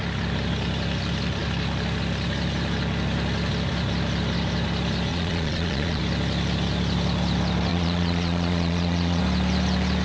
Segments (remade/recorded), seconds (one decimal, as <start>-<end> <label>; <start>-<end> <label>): 0.0-5.1 recorded; 5.1-6.0 remade; 6.0-7.7 recorded; 7.7-9.2 remade; 9.2-10.0 recorded